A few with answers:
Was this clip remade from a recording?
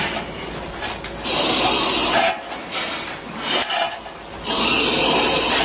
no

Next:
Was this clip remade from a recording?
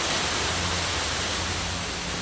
no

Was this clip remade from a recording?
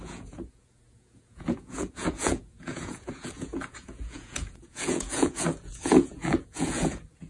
yes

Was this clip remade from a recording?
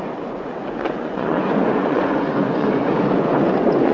yes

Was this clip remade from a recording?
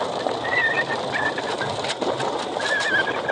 no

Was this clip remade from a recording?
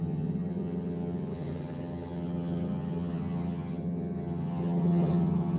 yes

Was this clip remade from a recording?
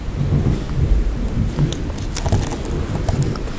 no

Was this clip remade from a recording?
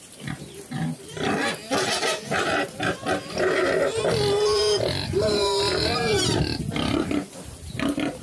no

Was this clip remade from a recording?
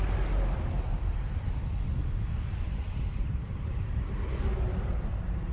no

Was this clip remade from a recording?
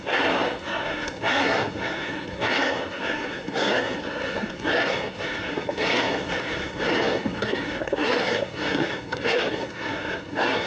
yes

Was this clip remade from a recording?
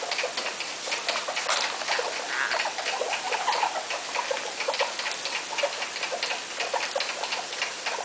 no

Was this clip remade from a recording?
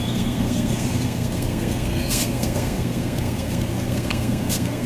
yes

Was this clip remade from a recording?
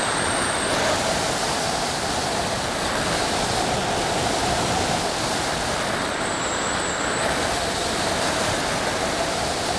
yes